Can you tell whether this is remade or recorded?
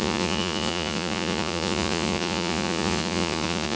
remade